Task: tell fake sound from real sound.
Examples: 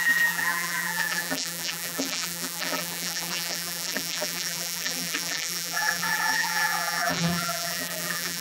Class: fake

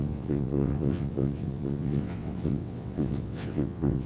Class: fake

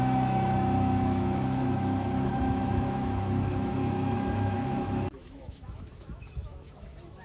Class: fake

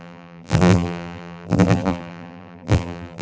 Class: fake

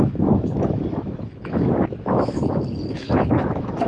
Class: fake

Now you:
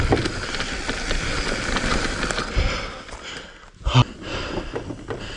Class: real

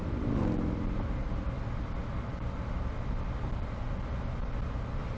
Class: real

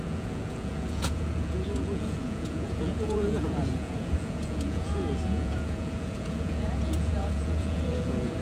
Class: fake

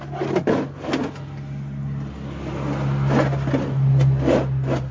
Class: real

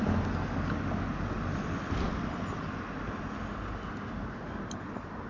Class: real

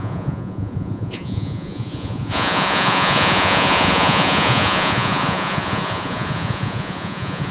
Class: fake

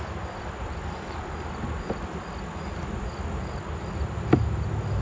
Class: real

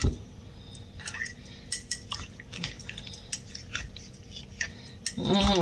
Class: real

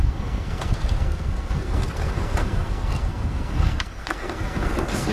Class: fake